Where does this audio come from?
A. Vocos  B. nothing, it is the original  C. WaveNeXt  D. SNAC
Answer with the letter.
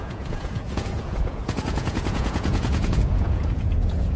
A